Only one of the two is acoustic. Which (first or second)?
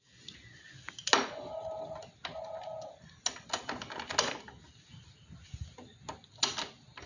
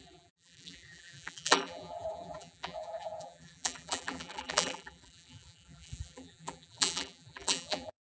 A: first